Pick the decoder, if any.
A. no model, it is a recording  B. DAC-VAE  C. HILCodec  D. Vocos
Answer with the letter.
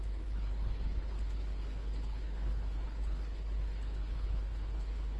C